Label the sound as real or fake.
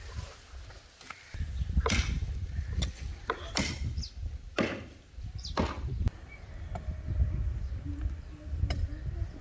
real